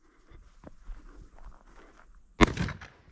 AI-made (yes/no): no